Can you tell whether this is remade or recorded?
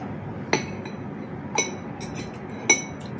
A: recorded